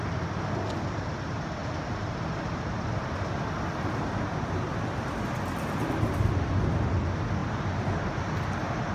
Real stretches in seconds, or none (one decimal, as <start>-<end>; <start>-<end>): 0.0-8.9